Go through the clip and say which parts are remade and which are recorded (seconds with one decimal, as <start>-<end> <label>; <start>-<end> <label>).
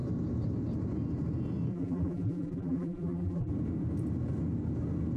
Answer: 0.0-1.7 recorded; 1.7-3.5 remade; 3.5-5.2 recorded